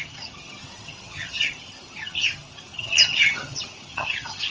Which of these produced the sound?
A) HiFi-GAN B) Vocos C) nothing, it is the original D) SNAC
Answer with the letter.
A